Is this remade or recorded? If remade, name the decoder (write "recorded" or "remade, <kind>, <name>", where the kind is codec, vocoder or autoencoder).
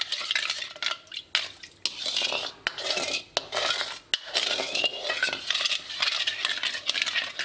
recorded